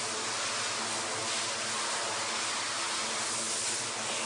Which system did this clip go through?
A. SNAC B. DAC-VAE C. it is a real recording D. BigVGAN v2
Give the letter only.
C